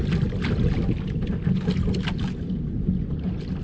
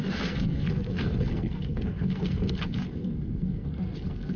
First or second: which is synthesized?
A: second